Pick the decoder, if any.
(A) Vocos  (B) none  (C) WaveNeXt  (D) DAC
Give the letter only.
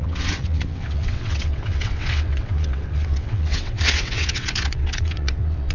C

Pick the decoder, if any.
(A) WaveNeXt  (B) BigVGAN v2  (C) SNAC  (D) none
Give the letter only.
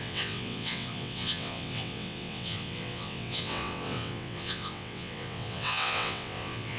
A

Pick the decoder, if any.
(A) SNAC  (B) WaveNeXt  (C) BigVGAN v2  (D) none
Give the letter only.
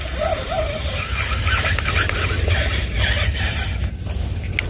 D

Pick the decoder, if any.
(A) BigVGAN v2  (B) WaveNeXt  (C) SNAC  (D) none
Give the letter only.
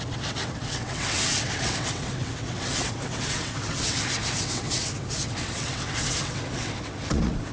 B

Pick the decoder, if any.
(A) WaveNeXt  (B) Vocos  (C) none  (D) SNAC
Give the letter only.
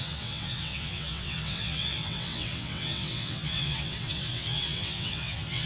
A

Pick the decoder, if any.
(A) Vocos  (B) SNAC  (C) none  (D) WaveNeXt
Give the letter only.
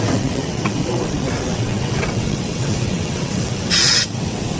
D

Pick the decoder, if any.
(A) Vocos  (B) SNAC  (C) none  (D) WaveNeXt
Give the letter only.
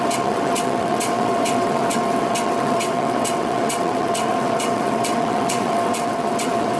D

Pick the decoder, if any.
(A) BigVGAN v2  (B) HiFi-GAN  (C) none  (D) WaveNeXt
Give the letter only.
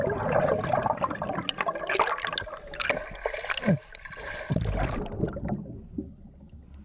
C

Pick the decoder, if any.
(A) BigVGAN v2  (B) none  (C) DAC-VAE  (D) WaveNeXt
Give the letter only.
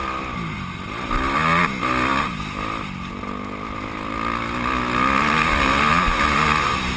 B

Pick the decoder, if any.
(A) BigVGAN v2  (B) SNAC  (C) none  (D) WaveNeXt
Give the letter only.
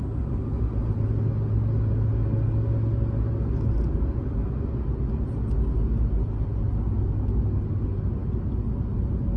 C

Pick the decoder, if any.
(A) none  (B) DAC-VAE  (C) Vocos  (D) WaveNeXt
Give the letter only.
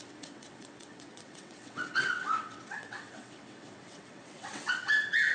D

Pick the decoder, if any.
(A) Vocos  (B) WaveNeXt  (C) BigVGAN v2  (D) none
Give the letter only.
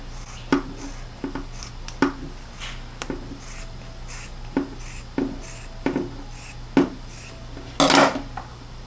D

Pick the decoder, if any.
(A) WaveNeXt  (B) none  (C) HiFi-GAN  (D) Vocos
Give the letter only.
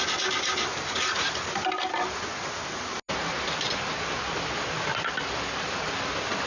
B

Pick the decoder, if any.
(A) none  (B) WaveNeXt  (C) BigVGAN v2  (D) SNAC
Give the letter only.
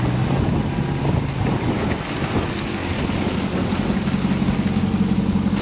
A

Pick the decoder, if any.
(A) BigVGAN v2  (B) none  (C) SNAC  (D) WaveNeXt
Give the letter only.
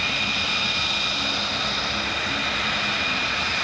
B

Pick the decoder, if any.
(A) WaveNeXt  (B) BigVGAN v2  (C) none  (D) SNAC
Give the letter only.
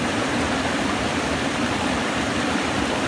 C